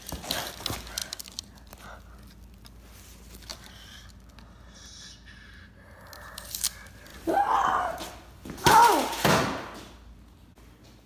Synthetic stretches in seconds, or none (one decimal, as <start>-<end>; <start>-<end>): 1.0-1.7; 3.5-4.1; 7.1-9.3